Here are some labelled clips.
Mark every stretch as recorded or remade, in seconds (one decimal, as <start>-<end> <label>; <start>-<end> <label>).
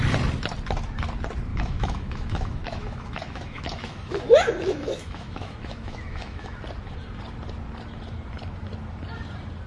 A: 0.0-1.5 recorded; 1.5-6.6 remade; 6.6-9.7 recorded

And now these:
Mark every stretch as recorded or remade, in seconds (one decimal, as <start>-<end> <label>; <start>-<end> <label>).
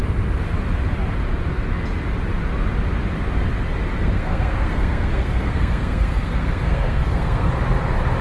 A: 0.0-4.0 recorded; 4.0-7.5 remade; 7.5-8.2 recorded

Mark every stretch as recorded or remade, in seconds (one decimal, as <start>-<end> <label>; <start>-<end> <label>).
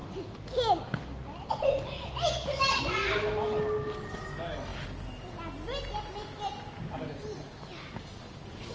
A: 0.0-8.7 recorded